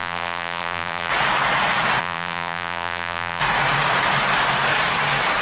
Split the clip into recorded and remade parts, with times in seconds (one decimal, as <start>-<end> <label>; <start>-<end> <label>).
0.0-1.1 remade; 1.1-2.0 recorded; 2.0-3.4 remade; 3.4-5.4 recorded